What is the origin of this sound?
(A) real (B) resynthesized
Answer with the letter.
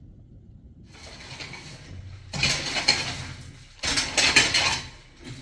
A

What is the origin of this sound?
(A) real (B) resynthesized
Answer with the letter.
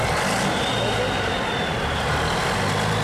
A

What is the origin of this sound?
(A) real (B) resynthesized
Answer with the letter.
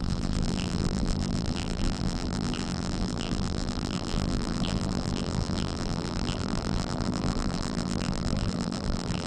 B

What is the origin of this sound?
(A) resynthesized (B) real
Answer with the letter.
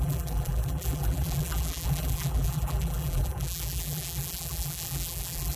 A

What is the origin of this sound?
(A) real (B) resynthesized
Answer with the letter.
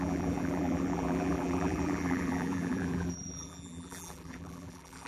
B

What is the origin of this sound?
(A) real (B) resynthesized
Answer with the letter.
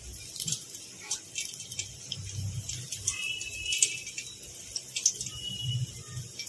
A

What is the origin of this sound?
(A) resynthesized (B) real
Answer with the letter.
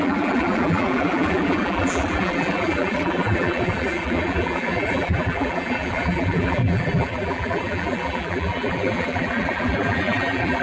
A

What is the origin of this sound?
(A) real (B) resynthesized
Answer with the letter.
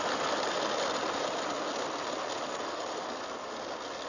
A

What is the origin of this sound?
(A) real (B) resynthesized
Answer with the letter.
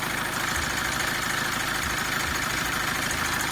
A